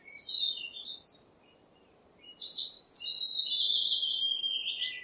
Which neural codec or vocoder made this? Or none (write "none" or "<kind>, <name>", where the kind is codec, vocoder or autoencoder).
none